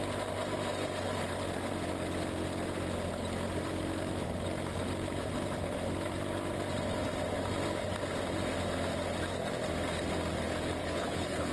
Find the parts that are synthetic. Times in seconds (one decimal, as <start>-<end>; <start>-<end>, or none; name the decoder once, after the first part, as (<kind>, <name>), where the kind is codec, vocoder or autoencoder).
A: 10.8-11.5 (codec, HILCodec)